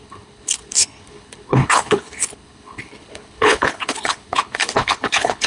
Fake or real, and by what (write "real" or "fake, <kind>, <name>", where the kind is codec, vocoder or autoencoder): fake, codec, HILCodec